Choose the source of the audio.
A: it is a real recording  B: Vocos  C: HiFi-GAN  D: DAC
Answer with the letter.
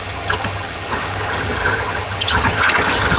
C